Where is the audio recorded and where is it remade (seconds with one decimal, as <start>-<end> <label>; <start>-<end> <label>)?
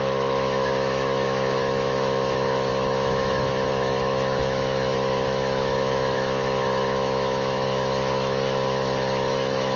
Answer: 0.0-9.8 remade